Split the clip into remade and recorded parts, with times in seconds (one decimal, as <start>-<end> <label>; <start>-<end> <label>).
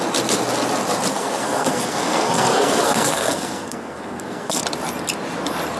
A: 0.0-1.1 recorded; 1.1-4.6 remade; 4.6-5.8 recorded